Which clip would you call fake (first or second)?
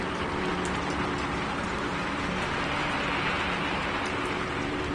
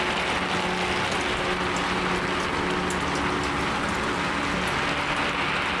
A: first